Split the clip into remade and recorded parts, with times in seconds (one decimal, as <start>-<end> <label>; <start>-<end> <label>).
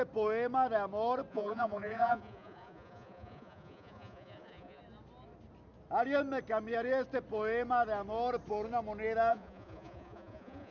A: 0.0-1.3 recorded; 1.3-4.8 remade; 4.8-9.3 recorded; 9.3-10.7 remade